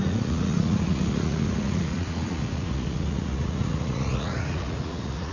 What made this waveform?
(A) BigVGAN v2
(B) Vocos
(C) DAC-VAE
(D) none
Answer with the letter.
B